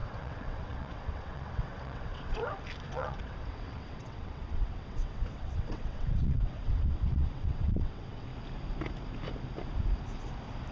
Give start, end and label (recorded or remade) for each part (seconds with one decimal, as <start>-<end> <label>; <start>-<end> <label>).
0.0-2.4 remade; 2.4-2.9 recorded; 2.9-8.3 remade; 8.3-10.7 recorded